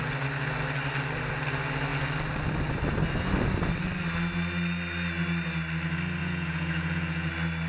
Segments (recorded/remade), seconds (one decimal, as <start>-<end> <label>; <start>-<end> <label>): 0.0-6.2 recorded; 6.2-7.3 remade; 7.3-7.7 recorded